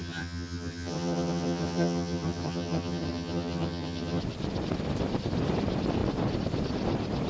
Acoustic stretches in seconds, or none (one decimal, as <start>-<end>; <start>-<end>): 4.2-7.3